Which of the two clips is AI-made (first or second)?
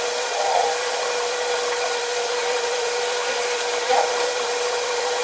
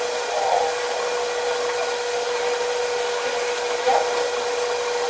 first